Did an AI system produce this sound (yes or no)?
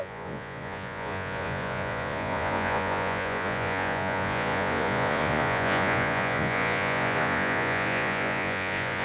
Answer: yes